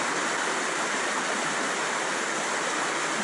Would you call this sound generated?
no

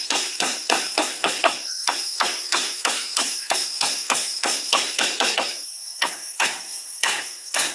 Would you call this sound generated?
yes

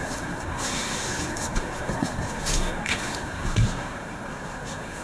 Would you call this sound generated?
yes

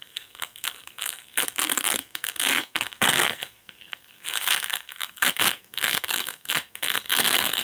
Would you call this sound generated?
yes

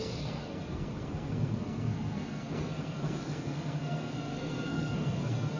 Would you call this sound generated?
yes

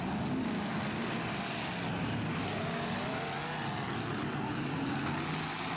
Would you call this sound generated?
no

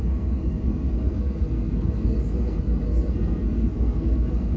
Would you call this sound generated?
yes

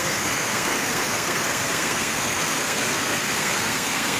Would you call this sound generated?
yes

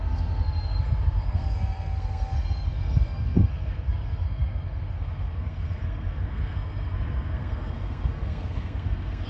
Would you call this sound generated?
yes